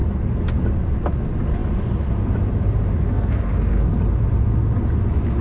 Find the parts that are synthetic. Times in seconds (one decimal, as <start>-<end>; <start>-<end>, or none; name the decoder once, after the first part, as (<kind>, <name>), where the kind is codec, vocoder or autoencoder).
3.1-3.9 (codec, SNAC)